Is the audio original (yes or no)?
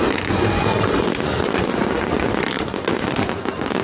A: no